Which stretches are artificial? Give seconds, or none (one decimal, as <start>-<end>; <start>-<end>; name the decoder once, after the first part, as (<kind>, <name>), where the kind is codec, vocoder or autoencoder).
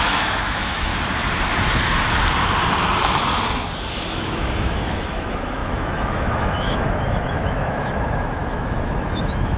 0.0-0.9 (autoencoder, DAC-VAE); 3.9-9.6